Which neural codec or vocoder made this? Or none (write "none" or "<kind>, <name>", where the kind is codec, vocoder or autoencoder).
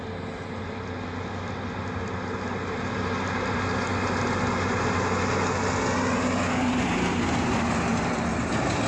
none